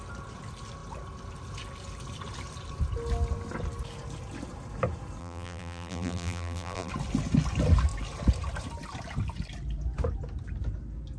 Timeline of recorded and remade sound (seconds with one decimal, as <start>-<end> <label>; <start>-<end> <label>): 0.0-5.2 recorded; 5.2-6.9 remade; 6.9-11.2 recorded